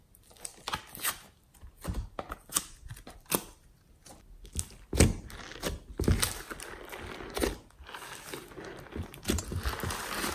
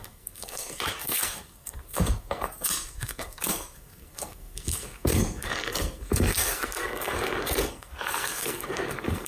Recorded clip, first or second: first